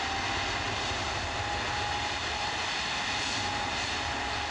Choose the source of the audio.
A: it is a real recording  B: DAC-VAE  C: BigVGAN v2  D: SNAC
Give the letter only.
A